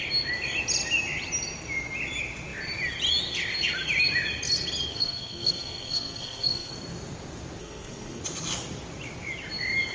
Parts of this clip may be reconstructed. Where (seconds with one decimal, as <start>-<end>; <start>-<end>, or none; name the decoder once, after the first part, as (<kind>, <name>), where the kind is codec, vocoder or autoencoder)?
4.9-6.7 (codec, SNAC); 7.6-8.2